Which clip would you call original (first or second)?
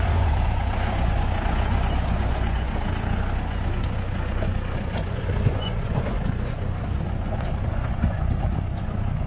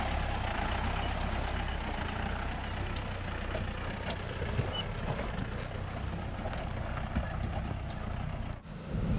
second